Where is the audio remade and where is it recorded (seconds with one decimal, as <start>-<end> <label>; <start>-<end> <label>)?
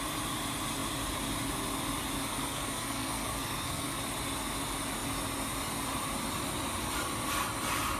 0.0-2.3 recorded; 2.3-4.0 remade; 4.0-8.0 recorded